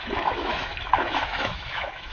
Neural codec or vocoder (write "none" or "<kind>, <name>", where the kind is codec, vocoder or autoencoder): autoencoder, DAC-VAE